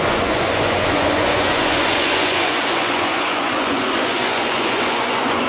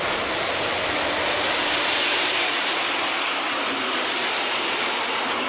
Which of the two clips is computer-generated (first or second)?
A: first